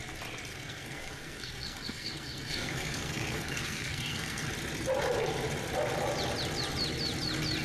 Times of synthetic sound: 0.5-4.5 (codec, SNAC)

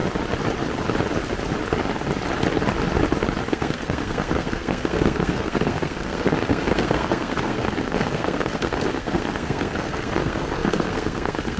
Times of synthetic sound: 3.5-11.6 (codec, SNAC)

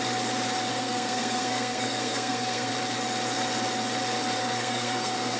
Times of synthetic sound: 0.7-2.7 (codec, SNAC); 4.4-5.4

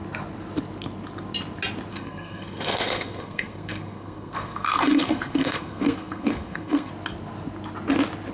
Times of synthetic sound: 1.9-6.9 (codec, SNAC)